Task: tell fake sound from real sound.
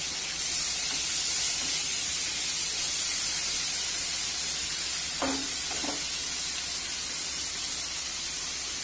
real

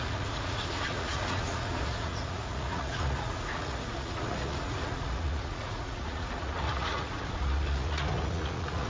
fake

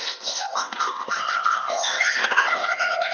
fake